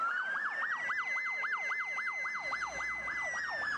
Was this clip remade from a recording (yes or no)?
no